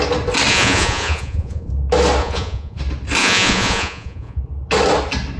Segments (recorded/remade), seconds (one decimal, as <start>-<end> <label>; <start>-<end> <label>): 0.0-0.5 recorded; 0.5-1.7 remade; 1.7-2.2 recorded; 2.2-2.8 remade; 2.8-3.2 recorded; 3.2-4.4 remade; 4.4-5.4 recorded